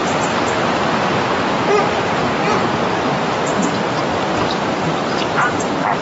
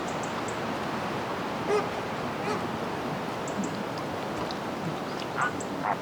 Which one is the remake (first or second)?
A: first